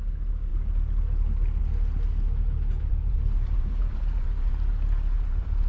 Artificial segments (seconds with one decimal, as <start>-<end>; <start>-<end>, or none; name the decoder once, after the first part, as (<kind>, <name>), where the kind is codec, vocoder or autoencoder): 2.9-5.7 (vocoder, BigVGAN v2)

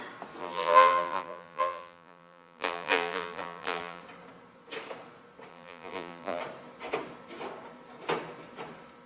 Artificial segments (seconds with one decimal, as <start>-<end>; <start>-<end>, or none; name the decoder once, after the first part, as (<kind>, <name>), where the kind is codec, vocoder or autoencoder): 0.4-4.0 (vocoder, BigVGAN v2); 5.5-6.4

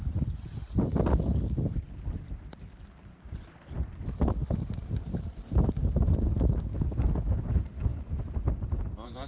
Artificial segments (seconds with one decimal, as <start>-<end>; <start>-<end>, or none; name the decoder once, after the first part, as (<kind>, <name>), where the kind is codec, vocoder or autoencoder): 4.4-6.5 (vocoder, BigVGAN v2)

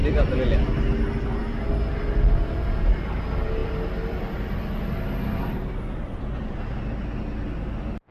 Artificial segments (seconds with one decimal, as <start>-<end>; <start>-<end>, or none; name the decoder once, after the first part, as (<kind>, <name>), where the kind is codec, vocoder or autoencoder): 0.0-0.9 (vocoder, BigVGAN v2); 3.6-6.6